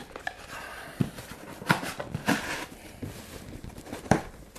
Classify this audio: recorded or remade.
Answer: remade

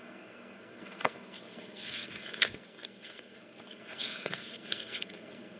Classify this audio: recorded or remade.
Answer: remade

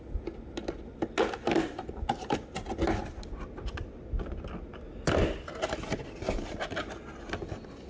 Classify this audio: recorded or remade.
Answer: recorded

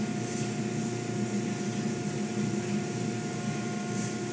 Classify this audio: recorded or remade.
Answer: recorded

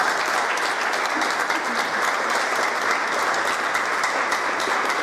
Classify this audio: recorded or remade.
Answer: recorded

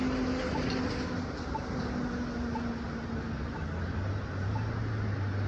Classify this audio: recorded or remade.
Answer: recorded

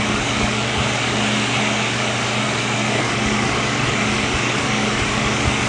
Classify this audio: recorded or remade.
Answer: remade